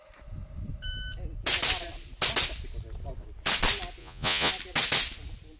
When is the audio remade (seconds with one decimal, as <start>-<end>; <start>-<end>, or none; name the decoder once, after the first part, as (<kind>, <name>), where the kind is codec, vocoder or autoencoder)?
4.0-4.5 (vocoder, Vocos)